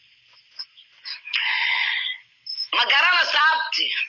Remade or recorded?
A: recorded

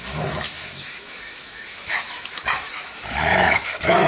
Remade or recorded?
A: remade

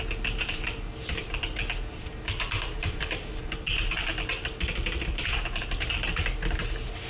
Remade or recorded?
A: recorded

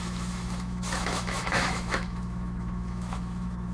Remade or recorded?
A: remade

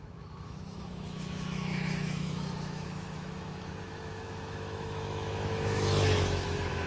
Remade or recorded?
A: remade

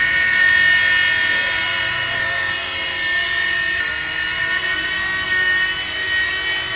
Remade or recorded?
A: recorded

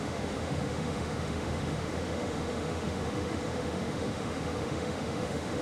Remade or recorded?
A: remade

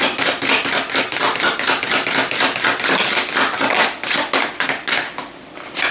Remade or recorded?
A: recorded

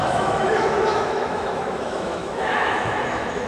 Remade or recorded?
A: remade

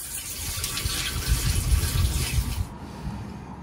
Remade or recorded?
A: recorded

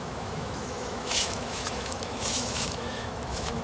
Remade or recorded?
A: remade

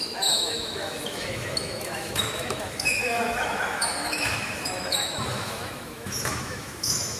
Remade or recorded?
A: remade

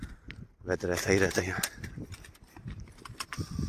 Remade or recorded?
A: recorded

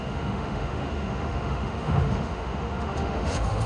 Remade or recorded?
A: remade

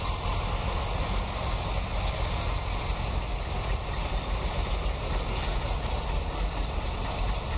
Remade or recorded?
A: recorded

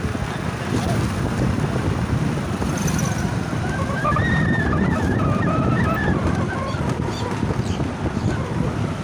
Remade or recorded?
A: recorded